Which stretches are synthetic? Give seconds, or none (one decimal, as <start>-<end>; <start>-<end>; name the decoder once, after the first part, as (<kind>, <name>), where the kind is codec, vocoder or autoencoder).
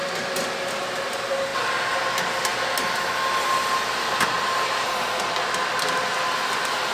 none